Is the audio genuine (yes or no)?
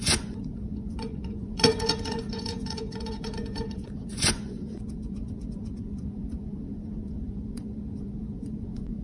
no